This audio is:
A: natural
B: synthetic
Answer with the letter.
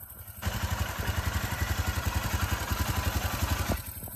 B